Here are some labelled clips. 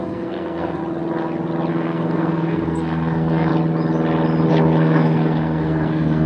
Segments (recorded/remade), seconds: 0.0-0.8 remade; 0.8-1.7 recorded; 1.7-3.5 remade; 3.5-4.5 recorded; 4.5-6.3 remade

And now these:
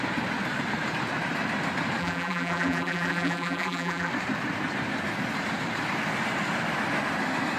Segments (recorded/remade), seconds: 0.0-2.0 recorded; 2.0-4.1 remade; 4.1-7.6 recorded

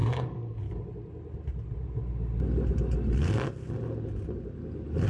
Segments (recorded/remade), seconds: 0.0-0.6 remade; 0.6-5.1 recorded

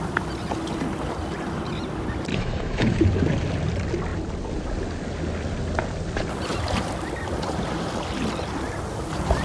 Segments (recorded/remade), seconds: 0.0-2.3 recorded; 2.3-3.0 remade; 3.0-9.4 recorded